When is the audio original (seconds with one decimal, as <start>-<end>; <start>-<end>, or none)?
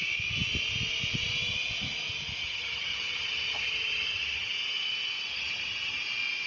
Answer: 0.0-2.4; 4.5-5.3; 6.0-6.5